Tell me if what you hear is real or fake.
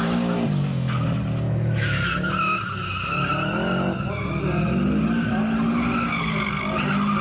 real